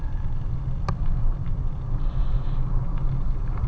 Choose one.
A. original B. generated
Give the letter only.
A